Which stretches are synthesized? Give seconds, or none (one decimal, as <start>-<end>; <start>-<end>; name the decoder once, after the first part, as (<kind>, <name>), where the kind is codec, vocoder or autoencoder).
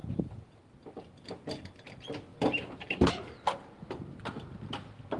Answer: none